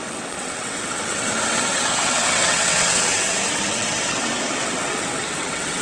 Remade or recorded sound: remade